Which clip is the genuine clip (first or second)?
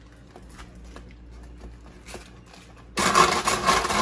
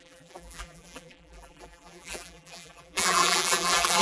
first